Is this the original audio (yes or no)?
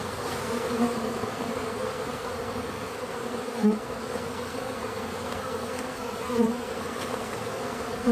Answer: no